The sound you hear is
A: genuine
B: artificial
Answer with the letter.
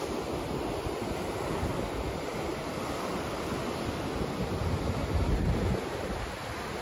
A